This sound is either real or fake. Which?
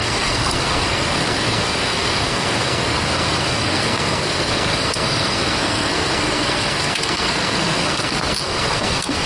fake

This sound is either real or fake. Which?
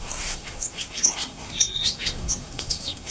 fake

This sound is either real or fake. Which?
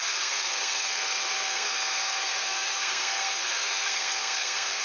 fake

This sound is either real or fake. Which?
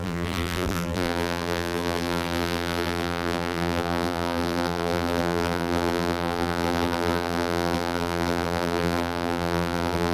fake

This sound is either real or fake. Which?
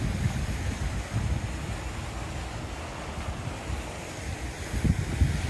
fake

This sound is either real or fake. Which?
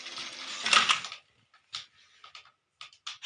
real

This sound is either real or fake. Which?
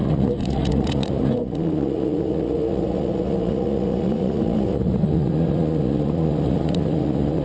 fake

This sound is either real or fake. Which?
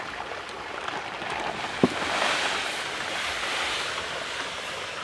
real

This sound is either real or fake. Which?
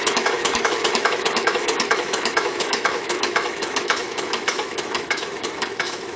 fake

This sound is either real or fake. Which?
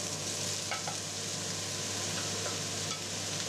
real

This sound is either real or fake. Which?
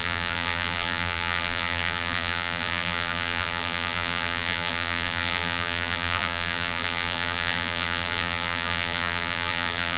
fake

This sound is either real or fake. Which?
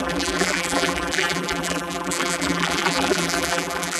fake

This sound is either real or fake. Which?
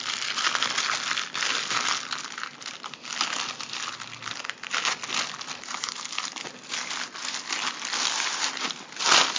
real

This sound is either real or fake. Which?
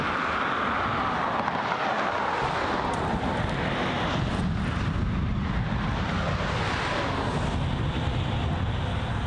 real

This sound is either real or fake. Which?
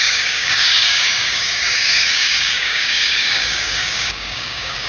fake